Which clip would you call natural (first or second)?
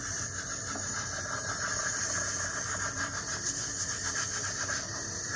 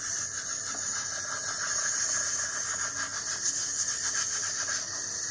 second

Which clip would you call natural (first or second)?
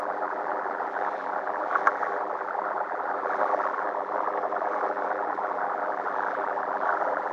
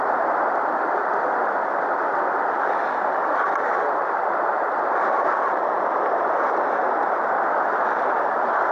second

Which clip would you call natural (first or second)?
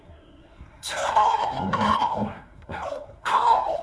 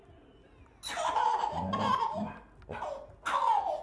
second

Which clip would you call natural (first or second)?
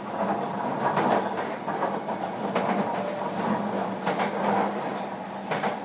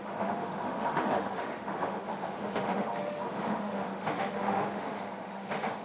first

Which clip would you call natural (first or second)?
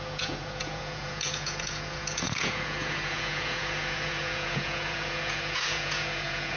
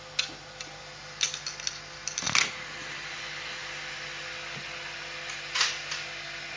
second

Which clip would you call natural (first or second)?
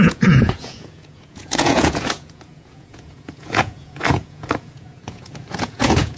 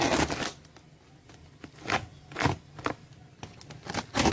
second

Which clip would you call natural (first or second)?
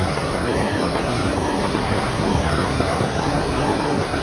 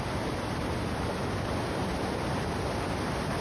second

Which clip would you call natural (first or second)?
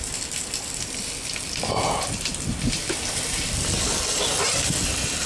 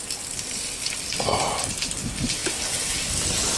second